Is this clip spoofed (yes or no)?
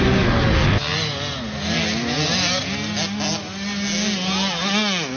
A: no